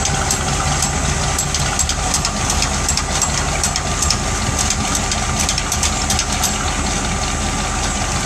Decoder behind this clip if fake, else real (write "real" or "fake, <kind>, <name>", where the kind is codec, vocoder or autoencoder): real